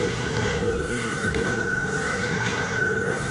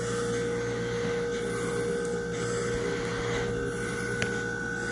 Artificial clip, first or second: first